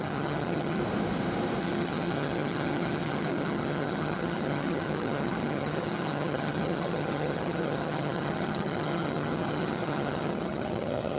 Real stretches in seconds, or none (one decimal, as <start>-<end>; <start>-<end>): 0.8-1.6